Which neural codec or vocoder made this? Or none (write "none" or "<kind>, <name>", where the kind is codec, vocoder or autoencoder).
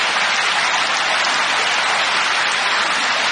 none